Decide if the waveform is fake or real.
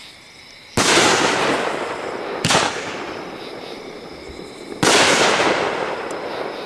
real